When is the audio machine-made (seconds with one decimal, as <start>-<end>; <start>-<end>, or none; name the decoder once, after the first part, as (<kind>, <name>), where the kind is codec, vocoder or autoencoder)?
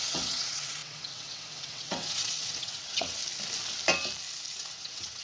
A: 0.0-3.2 (vocoder, WaveNeXt); 4.5-5.2